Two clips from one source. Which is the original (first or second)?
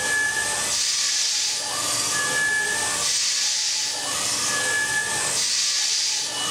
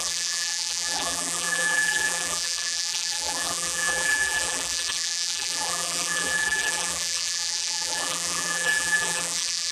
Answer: first